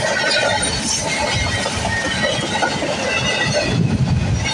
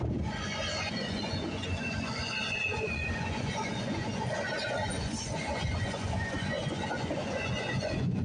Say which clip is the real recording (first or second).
first